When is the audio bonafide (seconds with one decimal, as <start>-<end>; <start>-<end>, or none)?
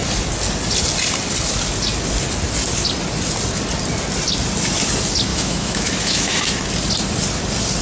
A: 0.0-5.3; 6.6-7.8